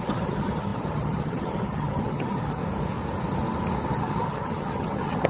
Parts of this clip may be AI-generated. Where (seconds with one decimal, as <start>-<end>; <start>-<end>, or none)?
0.0-2.6; 3.9-5.3